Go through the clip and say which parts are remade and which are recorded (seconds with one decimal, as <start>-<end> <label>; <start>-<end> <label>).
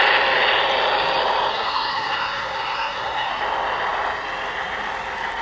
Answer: 0.0-1.5 recorded; 1.5-3.3 remade; 3.3-5.4 recorded